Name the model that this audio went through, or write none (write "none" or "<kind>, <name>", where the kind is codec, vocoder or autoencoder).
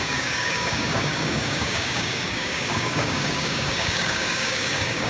codec, DAC